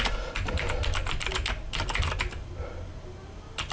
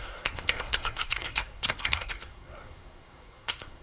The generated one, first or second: second